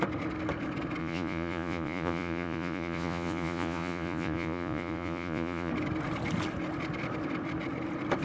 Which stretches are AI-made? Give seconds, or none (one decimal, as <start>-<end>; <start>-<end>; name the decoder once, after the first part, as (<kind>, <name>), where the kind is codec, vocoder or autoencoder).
1.0-5.7 (vocoder, Vocos)

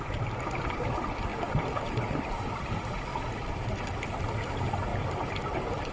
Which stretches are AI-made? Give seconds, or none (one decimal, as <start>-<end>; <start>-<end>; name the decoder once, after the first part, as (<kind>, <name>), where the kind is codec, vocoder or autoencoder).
0.0-5.9 (vocoder, BigVGAN v2)